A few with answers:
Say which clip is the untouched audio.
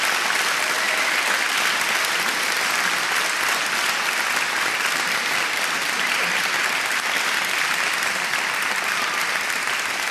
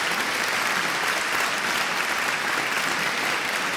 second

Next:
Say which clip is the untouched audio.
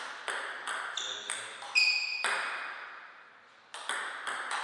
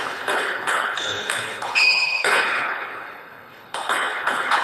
first